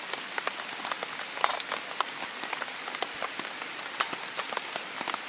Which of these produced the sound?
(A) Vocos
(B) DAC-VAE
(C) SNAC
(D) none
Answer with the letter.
D